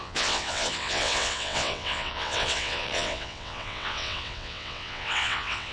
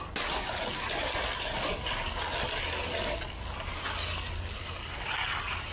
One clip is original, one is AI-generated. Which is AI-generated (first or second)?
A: first